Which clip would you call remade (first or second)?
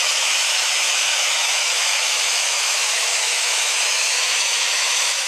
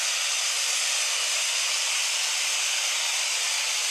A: first